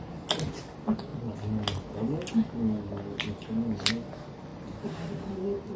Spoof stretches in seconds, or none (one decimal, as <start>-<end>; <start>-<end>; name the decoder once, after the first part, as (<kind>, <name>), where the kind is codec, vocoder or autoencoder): none